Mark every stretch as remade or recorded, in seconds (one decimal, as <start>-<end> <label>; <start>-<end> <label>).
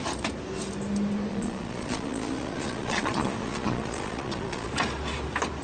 0.0-1.3 recorded; 1.3-4.7 remade; 4.7-5.6 recorded